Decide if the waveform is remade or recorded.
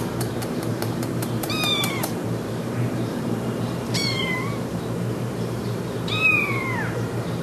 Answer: remade